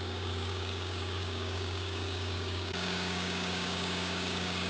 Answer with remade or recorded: remade